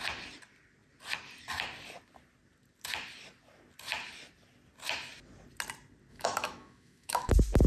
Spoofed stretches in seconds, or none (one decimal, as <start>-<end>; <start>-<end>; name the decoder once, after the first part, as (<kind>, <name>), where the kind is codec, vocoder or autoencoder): 6.1-7.3 (autoencoder, DAC-VAE)